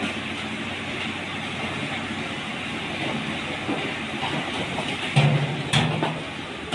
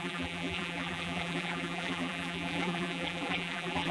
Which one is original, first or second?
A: first